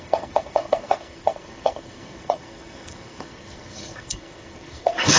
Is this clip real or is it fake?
fake